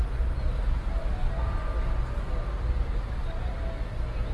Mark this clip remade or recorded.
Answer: recorded